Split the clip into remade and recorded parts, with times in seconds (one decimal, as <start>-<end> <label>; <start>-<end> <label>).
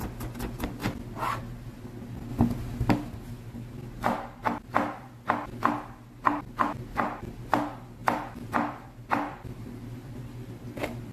0.0-0.8 recorded; 0.8-1.4 remade; 1.4-4.4 recorded; 4.4-5.1 remade; 5.1-8.0 recorded; 8.0-10.1 remade; 10.1-11.1 recorded